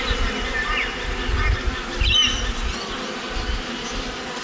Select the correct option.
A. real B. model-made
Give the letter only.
A